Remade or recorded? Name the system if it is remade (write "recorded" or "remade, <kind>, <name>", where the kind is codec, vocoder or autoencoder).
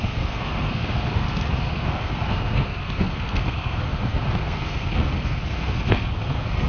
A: remade, codec, SNAC